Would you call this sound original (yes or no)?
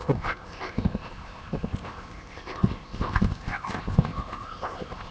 no